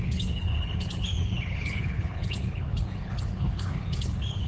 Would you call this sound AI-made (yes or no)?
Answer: yes